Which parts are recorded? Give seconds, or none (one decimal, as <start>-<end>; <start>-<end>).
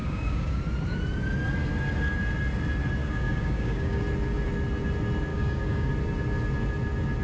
0.6-3.0; 4.0-5.3; 5.9-7.2